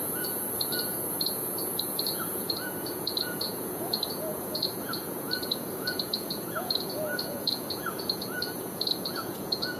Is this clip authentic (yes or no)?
no